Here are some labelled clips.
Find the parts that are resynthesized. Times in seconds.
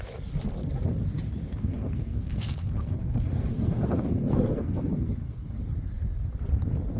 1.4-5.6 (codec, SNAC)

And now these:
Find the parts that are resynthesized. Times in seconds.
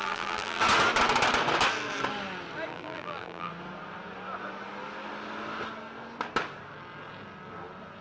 0.0-0.6 (vocoder, BigVGAN v2); 2.7-3.5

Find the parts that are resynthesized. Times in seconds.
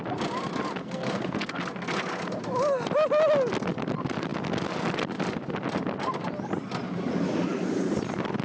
0.8-1.6 (codec, SNAC)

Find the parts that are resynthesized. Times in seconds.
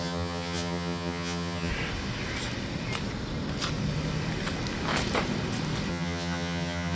0.0-1.7 (vocoder, HiFi-GAN); 5.9-7.0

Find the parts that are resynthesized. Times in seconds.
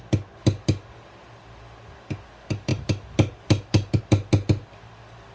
none